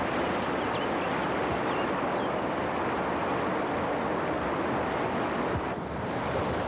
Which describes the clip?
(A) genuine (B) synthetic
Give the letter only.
A